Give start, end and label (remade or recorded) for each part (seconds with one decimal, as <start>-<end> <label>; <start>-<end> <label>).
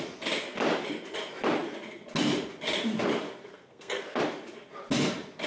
0.0-3.5 recorded; 3.5-4.2 remade; 4.2-5.5 recorded